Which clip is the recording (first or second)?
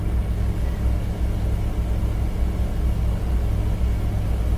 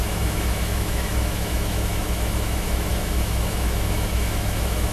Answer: first